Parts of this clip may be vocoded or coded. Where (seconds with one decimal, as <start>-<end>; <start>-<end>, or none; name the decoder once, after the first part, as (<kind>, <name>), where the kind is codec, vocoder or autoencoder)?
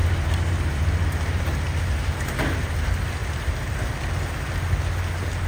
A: none